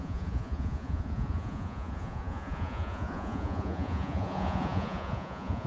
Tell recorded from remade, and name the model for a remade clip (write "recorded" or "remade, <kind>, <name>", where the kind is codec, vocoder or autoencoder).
remade, vocoder, Vocos